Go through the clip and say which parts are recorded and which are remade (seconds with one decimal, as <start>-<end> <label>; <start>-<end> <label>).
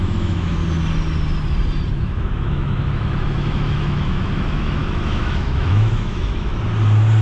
0.0-0.6 remade; 0.6-1.9 recorded; 1.9-6.5 remade; 6.5-7.2 recorded